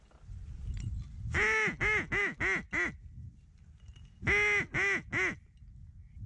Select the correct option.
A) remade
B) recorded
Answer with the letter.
B